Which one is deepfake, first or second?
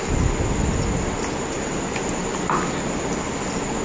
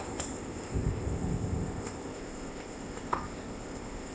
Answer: second